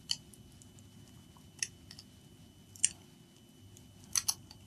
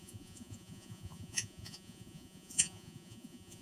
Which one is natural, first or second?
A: first